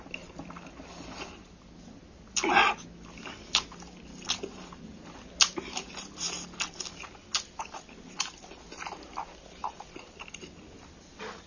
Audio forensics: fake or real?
real